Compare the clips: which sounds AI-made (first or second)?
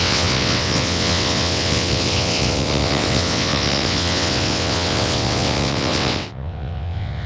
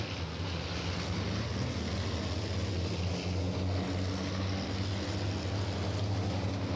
first